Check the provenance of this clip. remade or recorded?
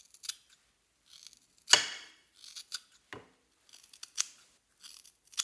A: recorded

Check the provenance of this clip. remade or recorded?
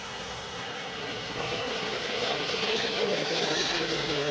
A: remade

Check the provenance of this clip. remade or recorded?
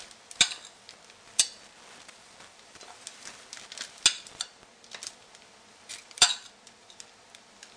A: recorded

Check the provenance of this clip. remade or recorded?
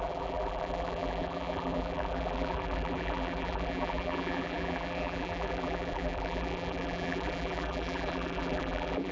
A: remade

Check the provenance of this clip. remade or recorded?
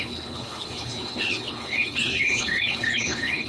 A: remade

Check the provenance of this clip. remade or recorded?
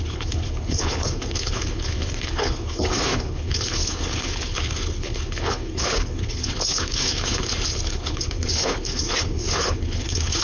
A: remade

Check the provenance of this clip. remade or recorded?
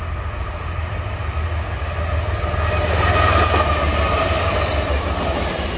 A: recorded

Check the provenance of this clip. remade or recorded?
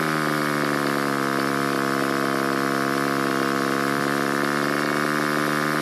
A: recorded